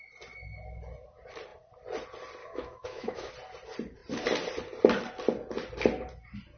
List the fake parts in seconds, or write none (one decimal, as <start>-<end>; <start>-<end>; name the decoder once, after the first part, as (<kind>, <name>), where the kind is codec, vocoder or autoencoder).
2.4-3.3 (autoencoder, DAC-VAE)